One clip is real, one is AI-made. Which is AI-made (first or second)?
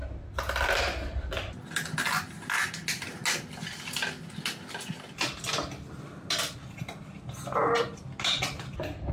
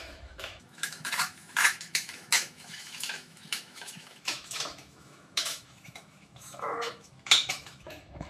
second